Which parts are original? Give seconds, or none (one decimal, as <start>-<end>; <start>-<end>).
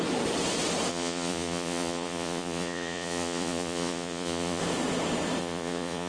0.0-0.9; 4.6-5.4